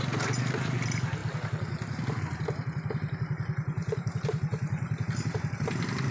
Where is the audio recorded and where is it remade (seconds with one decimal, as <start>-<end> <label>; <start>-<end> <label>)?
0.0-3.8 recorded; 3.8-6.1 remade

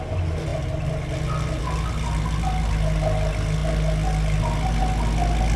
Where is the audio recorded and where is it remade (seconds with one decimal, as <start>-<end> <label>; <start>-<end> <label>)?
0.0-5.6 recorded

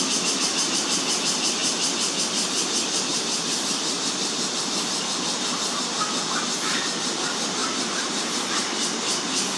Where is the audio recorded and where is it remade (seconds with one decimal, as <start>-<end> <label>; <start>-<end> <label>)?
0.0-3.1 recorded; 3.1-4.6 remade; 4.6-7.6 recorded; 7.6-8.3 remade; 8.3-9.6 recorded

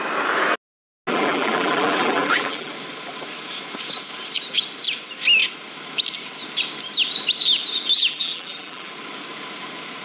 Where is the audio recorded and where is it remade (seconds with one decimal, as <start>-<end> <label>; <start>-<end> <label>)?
0.0-1.1 recorded; 1.1-2.7 remade; 2.7-7.9 recorded; 7.9-8.9 remade; 8.9-10.0 recorded

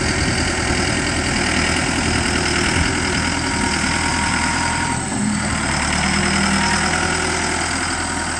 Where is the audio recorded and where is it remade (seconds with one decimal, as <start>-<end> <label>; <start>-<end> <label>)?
0.0-4.1 recorded; 4.1-6.2 remade; 6.2-8.4 recorded